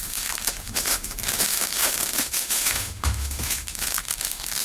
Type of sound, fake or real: fake